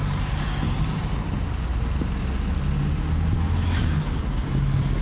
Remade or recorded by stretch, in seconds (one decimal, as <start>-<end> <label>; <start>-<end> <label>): 0.0-5.0 recorded